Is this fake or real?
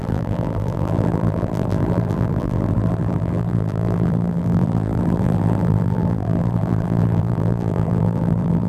fake